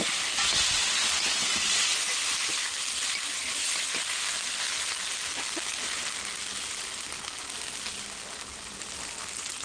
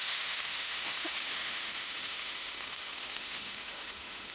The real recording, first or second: first